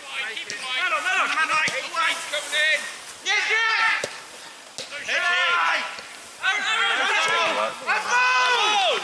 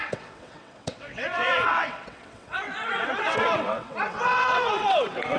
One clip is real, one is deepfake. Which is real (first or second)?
first